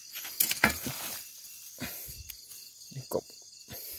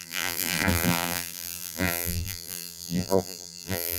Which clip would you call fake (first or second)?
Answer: second